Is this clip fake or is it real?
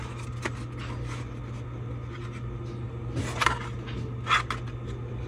real